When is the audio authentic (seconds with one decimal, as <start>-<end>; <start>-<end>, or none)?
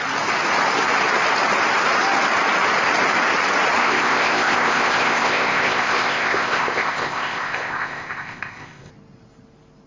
0.0-3.8; 8.9-9.9